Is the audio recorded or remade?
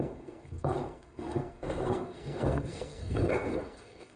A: remade